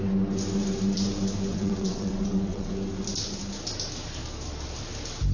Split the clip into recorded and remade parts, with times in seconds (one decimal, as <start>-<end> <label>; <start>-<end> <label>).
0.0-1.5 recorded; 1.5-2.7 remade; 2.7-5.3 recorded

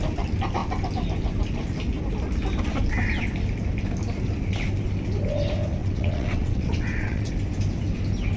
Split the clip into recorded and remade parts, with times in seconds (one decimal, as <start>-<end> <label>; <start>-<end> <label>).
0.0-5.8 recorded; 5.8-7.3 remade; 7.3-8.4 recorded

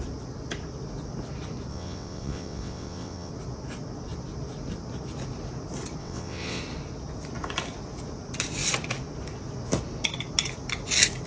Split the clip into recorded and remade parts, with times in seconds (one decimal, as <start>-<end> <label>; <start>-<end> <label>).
0.0-1.7 recorded; 1.7-3.3 remade; 3.3-6.0 recorded; 6.0-6.6 remade; 6.6-11.3 recorded